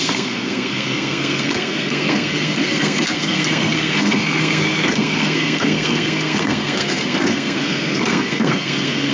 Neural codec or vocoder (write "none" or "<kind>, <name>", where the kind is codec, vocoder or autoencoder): codec, SNAC